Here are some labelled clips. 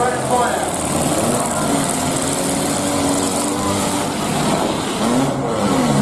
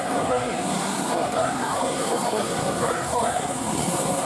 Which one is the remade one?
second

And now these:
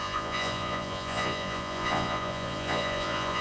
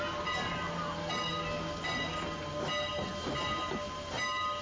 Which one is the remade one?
first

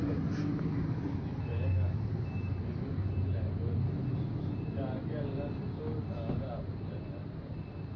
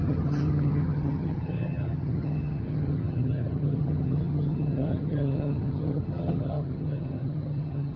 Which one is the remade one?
second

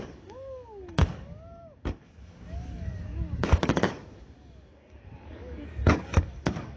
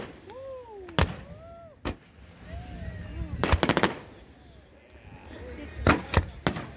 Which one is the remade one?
first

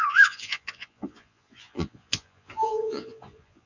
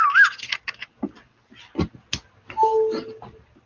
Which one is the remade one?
first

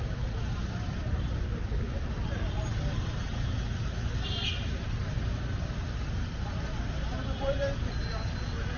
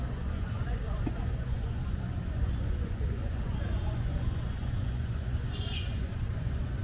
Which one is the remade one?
second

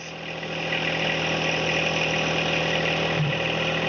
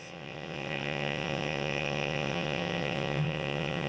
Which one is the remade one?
second